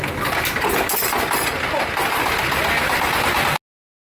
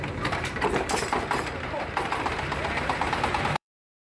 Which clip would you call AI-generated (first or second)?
second